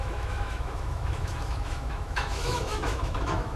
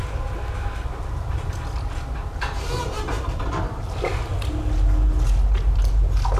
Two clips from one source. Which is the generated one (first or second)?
first